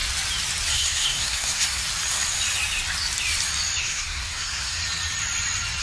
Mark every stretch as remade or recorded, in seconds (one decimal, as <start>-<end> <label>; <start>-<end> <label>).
0.0-0.7 recorded; 0.7-1.8 remade; 1.8-3.8 recorded; 3.8-4.8 remade; 4.8-5.8 recorded